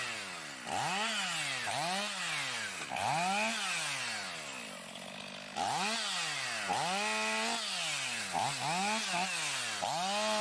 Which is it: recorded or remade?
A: recorded